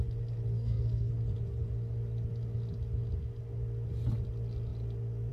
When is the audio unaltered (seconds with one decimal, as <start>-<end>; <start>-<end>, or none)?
0.0-0.5; 1.1-5.3